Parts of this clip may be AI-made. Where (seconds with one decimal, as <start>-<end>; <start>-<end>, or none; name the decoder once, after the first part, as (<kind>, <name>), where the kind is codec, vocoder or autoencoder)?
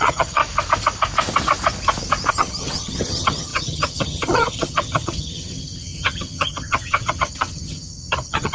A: 0.0-0.4 (vocoder, HiFi-GAN); 2.3-8.5